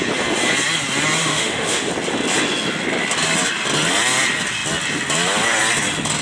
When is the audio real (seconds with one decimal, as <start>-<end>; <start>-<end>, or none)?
0.0-1.2; 1.9-6.2